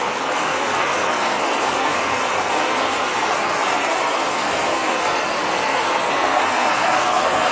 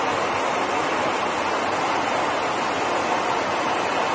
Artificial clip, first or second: first